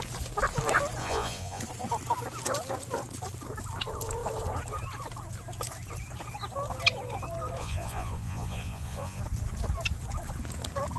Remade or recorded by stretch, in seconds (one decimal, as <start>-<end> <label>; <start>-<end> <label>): 0.0-1.0 recorded; 1.0-1.6 remade; 1.6-7.6 recorded; 7.6-9.2 remade; 9.2-11.0 recorded